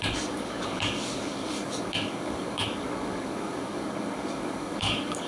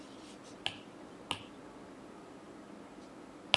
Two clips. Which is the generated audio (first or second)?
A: first